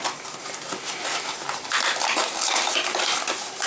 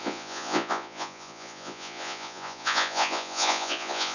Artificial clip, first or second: second